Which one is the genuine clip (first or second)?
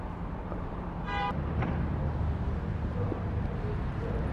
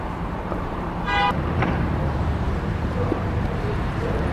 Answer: first